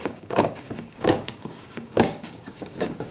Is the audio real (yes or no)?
no